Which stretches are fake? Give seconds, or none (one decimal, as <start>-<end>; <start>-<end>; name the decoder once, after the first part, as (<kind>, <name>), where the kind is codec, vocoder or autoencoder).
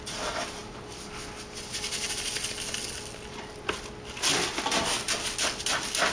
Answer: none